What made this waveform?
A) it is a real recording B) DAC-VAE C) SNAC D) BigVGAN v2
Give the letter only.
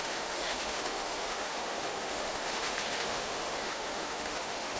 B